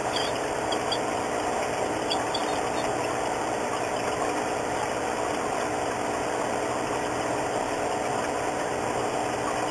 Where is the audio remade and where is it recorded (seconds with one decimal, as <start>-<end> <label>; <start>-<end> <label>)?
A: 0.0-1.0 remade; 1.0-9.7 recorded